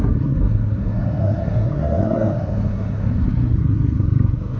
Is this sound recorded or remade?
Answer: remade